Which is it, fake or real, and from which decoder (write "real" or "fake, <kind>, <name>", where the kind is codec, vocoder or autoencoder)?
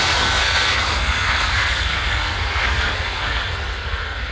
fake, codec, SNAC